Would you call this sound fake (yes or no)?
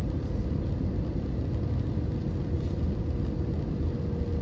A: no